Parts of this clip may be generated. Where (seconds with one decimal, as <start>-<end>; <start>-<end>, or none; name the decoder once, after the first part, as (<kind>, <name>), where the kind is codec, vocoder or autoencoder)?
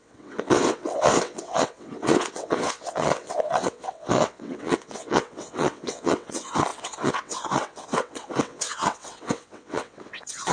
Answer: 0.0-10.5 (vocoder, WaveNeXt)